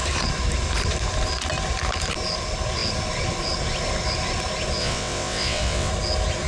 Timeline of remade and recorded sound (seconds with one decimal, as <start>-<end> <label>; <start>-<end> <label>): 0.0-4.8 recorded; 4.8-5.9 remade; 5.9-6.5 recorded